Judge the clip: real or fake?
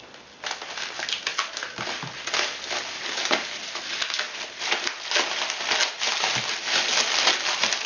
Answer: real